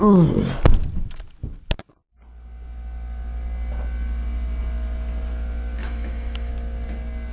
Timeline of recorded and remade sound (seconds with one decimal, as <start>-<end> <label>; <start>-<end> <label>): 0.0-5.8 recorded; 5.8-6.5 remade; 6.5-7.3 recorded